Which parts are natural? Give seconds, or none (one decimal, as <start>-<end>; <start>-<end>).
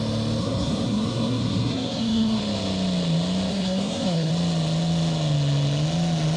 0.0-0.4; 2.4-3.5; 4.3-6.4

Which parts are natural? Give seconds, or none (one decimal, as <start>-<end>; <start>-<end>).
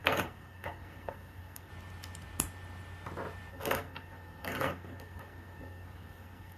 1.7-3.5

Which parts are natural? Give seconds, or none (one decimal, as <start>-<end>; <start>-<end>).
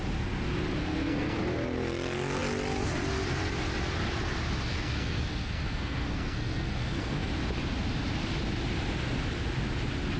0.0-0.8; 1.4-4.7; 7.3-10.2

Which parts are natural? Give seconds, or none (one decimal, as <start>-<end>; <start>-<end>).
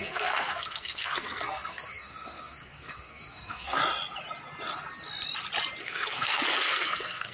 3.8-5.8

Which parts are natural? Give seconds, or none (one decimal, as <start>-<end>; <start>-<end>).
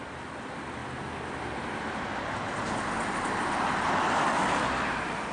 0.0-5.3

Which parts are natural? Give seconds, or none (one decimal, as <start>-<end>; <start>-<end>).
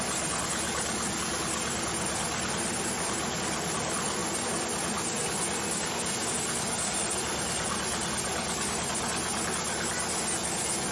0.0-10.9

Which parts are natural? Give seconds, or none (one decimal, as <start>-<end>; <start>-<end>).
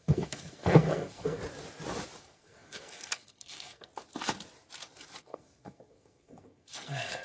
1.4-2.2; 3.9-5.2